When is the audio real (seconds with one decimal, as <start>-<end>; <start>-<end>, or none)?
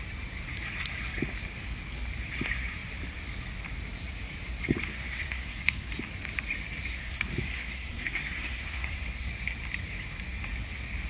0.0-4.9; 5.9-6.9; 9.3-11.1